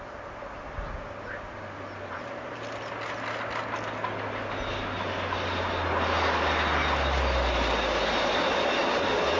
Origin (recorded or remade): recorded